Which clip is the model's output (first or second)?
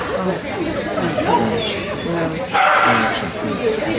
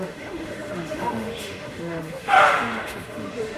second